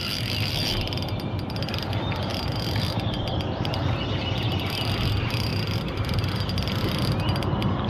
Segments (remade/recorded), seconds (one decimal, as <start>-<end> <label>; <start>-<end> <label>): 0.0-7.9 recorded